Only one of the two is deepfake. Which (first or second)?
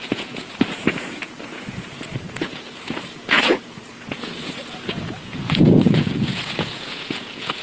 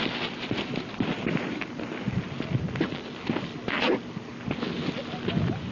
first